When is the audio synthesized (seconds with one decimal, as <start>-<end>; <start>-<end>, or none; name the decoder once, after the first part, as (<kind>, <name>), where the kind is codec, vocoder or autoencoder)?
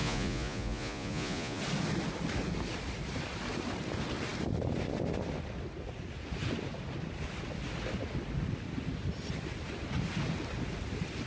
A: 0.0-1.6 (vocoder, Vocos)